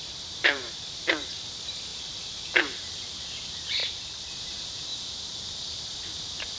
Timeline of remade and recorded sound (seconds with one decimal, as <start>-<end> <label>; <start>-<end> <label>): 0.0-3.8 remade; 3.8-4.3 recorded; 4.3-4.9 remade; 4.9-5.8 recorded; 5.8-6.6 remade